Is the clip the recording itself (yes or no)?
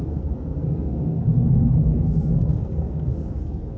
no